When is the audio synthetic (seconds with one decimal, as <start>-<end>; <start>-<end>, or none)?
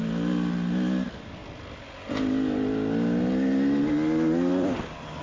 none